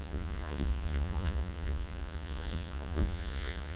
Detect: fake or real fake